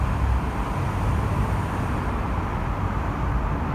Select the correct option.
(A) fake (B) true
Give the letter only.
B